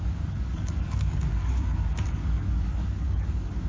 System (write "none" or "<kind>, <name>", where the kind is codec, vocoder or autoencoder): codec, DAC